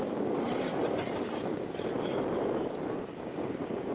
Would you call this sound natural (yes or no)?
yes